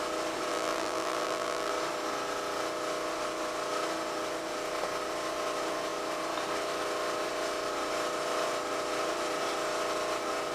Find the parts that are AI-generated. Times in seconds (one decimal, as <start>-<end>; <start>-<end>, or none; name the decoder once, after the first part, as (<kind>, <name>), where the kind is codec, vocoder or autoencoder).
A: 0.5-1.7 (vocoder, BigVGAN v2)